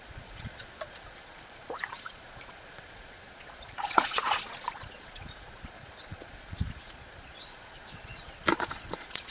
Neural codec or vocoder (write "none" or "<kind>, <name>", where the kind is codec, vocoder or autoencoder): vocoder, Vocos